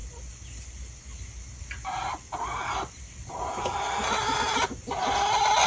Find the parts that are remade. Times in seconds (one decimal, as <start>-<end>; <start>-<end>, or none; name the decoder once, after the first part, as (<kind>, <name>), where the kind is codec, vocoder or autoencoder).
none